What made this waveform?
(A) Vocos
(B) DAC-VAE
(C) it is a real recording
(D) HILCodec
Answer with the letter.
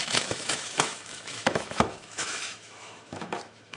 B